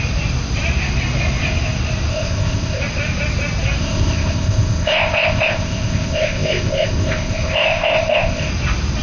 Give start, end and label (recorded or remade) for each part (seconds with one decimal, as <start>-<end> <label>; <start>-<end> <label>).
0.0-2.1 recorded; 2.1-2.8 remade; 2.8-3.8 recorded; 3.8-8.5 remade; 8.5-9.0 recorded